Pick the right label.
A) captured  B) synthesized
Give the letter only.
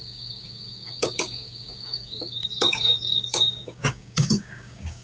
B